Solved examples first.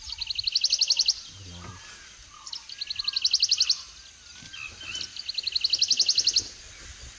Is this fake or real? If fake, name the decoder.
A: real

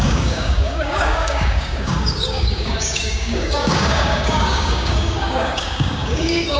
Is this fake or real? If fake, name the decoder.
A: fake, codec, DAC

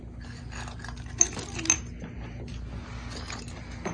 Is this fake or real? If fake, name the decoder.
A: real